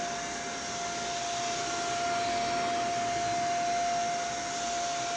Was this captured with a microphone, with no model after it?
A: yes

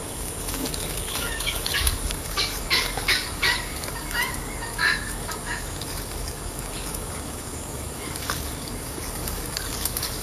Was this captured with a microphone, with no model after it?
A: no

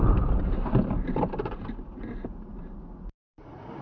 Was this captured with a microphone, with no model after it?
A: no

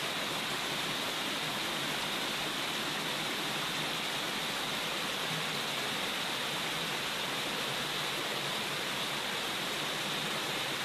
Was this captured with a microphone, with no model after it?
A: yes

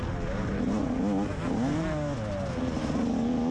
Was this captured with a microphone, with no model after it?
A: yes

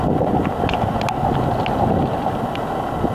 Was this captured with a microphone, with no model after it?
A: yes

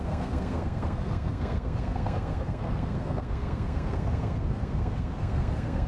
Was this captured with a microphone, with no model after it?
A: no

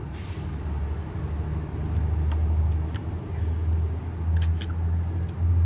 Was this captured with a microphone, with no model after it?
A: yes